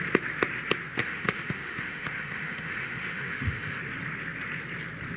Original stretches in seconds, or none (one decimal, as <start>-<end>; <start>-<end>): 0.0-1.0; 3.8-5.2